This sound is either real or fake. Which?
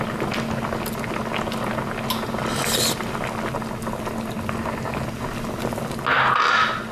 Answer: real